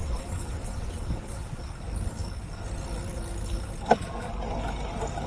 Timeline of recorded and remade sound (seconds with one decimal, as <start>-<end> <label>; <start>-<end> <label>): 0.0-1.7 remade; 1.7-5.3 recorded